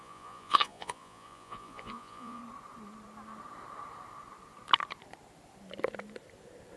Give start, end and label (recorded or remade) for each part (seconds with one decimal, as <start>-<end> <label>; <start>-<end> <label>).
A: 0.0-2.4 remade; 2.4-6.8 recorded